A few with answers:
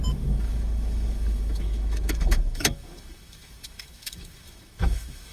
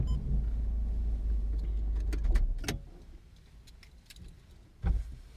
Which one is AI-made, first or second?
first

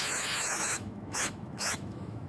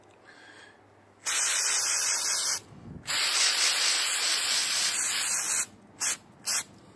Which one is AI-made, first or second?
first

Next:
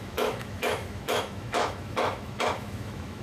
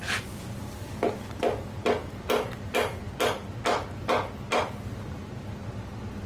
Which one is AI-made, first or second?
first